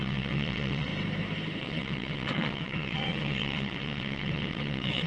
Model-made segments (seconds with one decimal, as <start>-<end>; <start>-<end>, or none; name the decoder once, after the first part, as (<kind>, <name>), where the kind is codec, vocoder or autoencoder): 0.0-0.9 (vocoder, WaveNeXt); 1.6-5.1